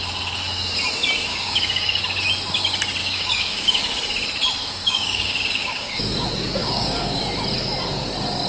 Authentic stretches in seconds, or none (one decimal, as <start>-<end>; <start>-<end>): 0.0-1.3; 2.0-3.0; 3.8-4.6; 6.0-6.6; 7.2-8.5